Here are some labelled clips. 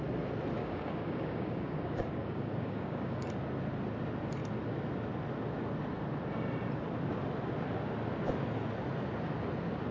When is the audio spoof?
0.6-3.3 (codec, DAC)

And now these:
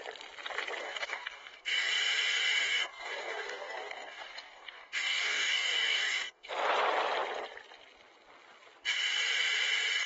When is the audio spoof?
0.8-1.9 (codec, DAC); 2.6-6.5

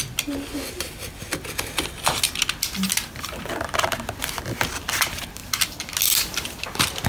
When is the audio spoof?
none

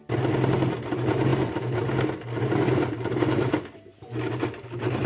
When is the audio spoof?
none

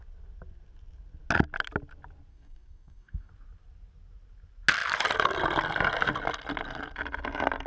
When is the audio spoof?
2.3-3.3 (codec, DAC)

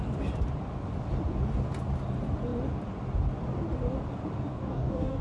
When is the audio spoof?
4.5-5.2 (codec, DAC)

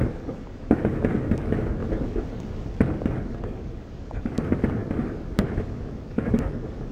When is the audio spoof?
0.0-6.9 (codec, DAC)